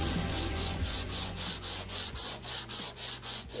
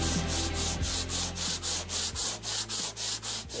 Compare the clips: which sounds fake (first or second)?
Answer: first